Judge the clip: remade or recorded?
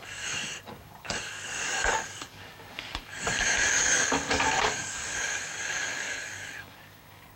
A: remade